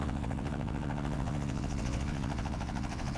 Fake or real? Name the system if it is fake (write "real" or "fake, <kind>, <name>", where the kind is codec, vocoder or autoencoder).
fake, vocoder, WaveNeXt